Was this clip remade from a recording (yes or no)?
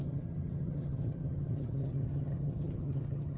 yes